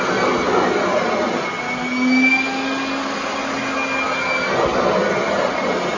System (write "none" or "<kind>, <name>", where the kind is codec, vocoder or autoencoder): none